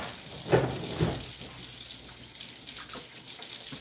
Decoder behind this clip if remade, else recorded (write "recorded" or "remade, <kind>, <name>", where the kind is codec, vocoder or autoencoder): recorded